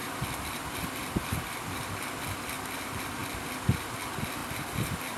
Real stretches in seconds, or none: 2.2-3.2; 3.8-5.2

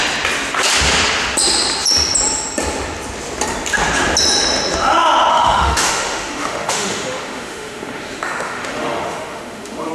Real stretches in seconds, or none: 0.0-5.3